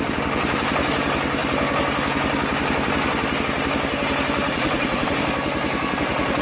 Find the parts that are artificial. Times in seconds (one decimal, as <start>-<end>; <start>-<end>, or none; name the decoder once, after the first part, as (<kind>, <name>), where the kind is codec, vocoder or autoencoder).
4.4-5.2 (vocoder, Vocos)